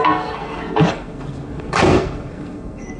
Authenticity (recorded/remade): remade